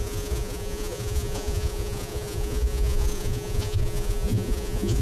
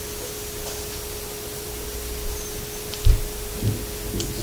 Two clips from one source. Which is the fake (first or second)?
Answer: first